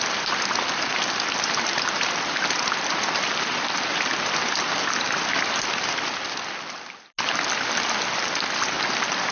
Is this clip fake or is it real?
real